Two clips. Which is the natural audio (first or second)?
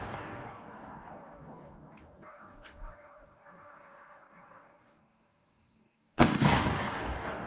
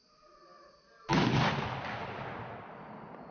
second